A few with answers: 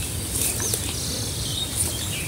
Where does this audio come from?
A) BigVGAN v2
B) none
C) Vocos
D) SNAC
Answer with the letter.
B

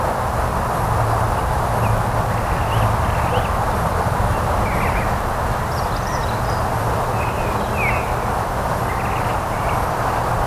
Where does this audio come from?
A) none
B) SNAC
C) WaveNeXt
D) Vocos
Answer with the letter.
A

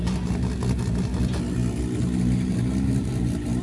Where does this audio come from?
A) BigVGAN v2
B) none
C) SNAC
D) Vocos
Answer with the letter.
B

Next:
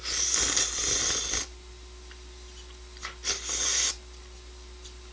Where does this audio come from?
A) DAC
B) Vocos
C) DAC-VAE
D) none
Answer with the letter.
D